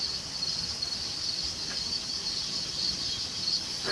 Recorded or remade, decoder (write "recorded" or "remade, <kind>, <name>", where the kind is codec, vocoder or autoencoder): recorded